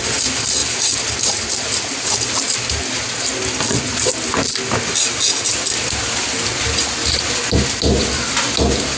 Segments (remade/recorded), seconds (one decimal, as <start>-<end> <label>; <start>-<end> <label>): 0.0-9.0 recorded